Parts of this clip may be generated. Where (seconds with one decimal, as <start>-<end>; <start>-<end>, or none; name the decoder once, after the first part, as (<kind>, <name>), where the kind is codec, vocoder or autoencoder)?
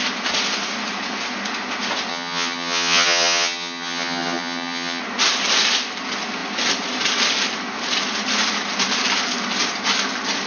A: 2.1-5.0 (vocoder, HiFi-GAN)